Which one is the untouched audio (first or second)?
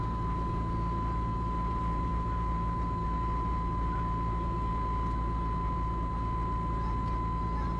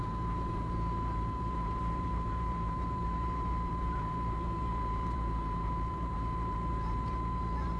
first